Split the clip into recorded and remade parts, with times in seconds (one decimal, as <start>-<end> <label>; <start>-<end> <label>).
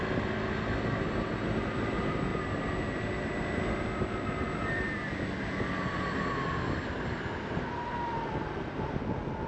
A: 0.0-9.5 recorded